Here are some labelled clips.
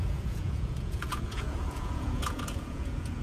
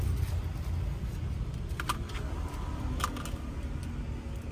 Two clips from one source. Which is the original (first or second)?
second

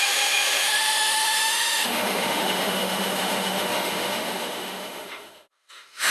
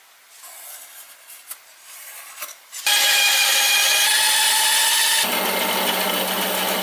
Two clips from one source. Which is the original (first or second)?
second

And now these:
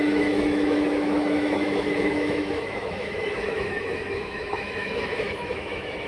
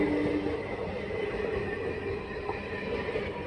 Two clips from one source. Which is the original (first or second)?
second